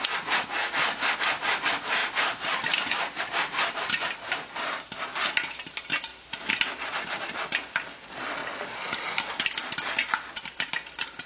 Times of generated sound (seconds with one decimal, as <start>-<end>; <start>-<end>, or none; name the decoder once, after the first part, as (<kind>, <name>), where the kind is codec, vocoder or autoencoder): 2.0-4.5 (vocoder, BigVGAN v2)